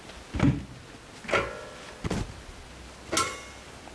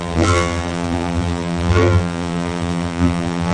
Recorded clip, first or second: first